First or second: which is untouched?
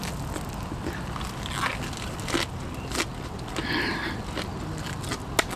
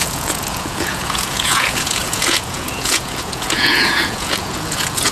first